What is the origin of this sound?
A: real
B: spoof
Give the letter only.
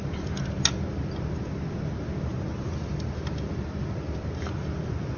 A